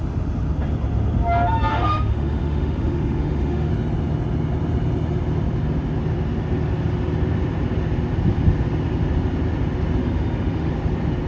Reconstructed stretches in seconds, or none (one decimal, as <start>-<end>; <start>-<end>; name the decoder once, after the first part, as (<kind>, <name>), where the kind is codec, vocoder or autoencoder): 1.7-3.7 (autoencoder, DAC-VAE); 10.0-10.7